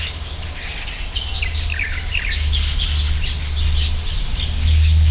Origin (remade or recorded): recorded